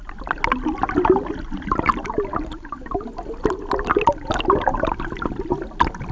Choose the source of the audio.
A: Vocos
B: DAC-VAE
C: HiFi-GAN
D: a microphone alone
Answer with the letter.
D